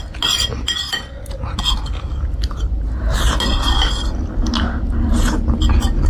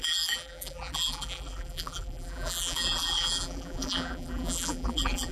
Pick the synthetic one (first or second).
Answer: second